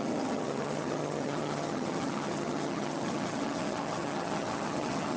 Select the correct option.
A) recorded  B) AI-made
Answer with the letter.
B